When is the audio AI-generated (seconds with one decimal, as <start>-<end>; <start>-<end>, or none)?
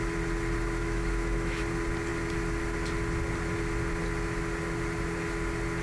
0.8-1.6